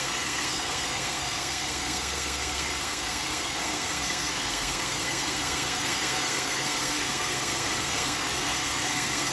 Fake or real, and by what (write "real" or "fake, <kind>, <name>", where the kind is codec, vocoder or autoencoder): fake, codec, SNAC